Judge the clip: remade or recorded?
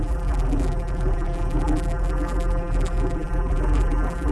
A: remade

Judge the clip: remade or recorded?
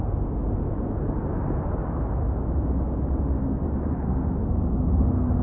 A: recorded